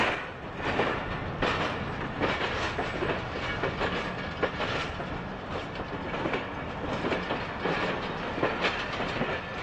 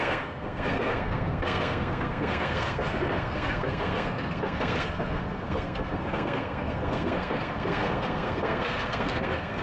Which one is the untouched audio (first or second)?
first